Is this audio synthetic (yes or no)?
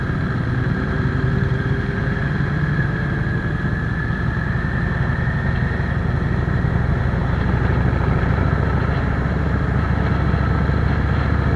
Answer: no